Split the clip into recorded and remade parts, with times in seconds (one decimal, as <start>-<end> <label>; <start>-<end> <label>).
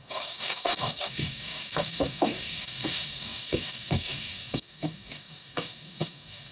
0.0-6.5 remade